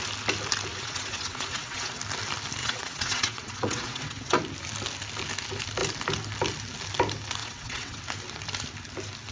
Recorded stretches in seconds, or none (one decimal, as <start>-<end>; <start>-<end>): 0.0-0.7; 2.0-2.6; 4.4-7.4; 8.0-9.3